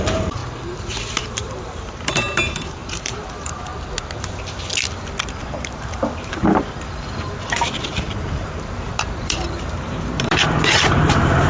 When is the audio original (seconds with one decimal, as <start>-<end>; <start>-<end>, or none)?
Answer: 0.4-1.1; 3.7-5.3

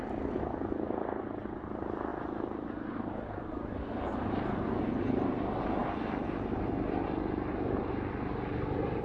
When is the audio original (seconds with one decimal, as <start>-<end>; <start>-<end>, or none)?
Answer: 0.0-9.0